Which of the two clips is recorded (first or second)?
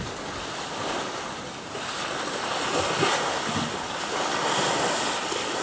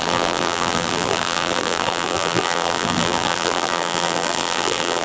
first